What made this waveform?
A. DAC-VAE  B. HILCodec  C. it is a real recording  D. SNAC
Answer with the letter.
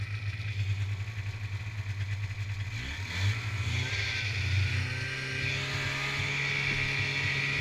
C